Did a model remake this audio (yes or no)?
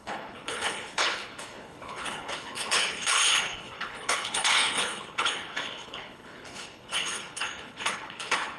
yes